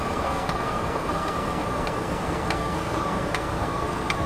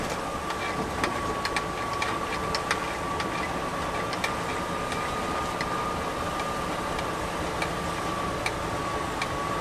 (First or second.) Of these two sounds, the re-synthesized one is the first